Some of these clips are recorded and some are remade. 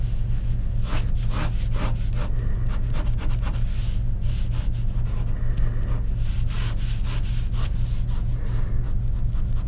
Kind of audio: recorded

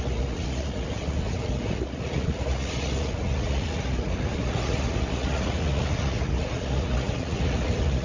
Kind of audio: remade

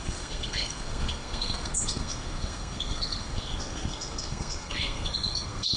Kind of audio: remade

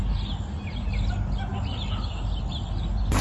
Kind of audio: recorded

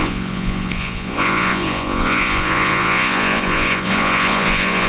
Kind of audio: remade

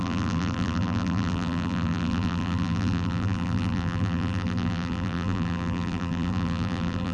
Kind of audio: remade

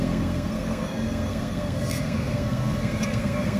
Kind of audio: remade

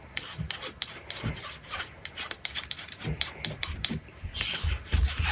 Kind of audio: recorded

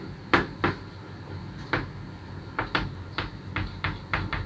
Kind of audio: recorded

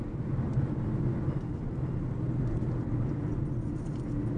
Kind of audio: recorded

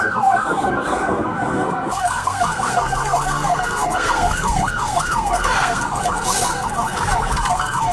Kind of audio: remade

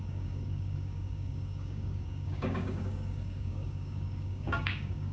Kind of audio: remade